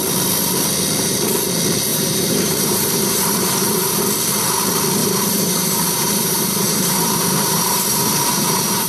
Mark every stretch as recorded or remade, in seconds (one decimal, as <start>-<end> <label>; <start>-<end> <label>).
0.0-1.9 recorded; 1.9-4.0 remade; 4.0-5.0 recorded; 5.0-8.9 remade